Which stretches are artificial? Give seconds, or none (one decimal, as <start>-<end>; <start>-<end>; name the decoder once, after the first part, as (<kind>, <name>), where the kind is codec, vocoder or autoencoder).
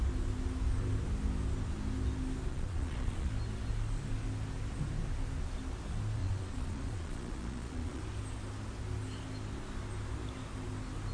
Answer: 2.5-3.3 (vocoder, Vocos); 6.2-8.0